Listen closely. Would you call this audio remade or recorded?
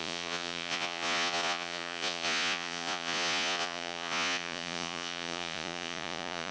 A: remade